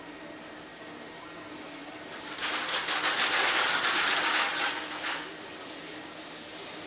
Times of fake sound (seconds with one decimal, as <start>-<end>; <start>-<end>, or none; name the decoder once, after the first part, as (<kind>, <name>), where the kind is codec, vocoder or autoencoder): none